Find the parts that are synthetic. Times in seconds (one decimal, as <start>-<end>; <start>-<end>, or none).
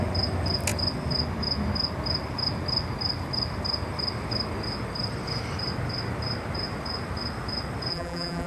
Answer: 7.9-8.5